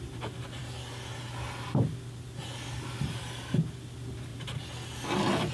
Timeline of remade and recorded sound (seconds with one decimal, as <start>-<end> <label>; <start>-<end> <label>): 0.0-5.5 recorded